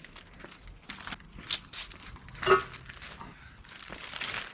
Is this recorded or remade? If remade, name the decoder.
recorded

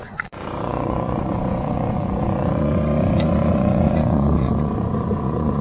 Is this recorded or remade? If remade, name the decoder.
remade, vocoder, Vocos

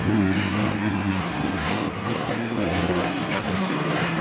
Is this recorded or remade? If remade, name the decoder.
remade, codec, SNAC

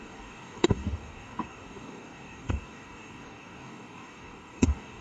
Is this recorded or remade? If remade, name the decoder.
remade, codec, DAC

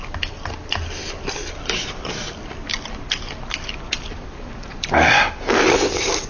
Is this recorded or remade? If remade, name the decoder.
recorded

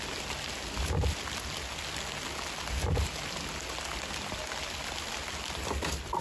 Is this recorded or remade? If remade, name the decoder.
recorded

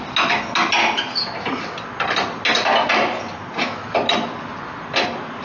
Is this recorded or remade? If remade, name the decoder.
recorded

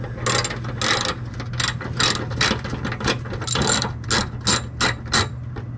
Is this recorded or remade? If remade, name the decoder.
recorded